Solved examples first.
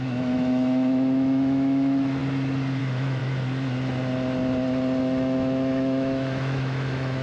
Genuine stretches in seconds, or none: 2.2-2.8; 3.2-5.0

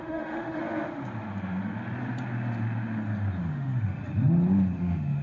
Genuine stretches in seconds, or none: 0.6-3.5; 4.0-4.8